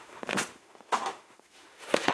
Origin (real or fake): fake